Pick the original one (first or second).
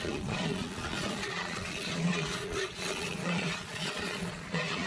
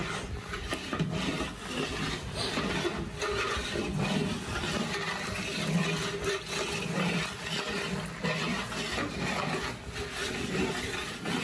second